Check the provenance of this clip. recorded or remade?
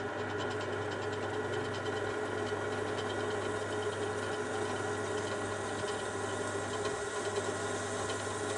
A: recorded